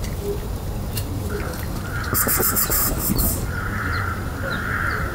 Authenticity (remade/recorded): recorded